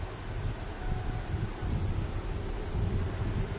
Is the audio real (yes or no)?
yes